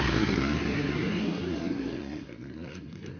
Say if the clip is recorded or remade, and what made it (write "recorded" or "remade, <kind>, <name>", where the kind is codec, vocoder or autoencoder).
remade, codec, SNAC